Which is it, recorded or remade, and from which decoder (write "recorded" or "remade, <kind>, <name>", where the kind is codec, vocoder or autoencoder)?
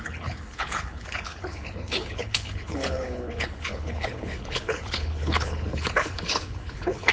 remade, codec, HILCodec